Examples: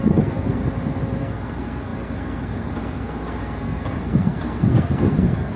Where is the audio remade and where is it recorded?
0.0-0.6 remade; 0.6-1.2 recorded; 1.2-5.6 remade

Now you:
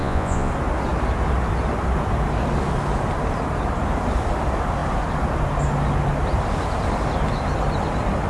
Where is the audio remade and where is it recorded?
0.0-0.5 remade; 0.5-8.3 recorded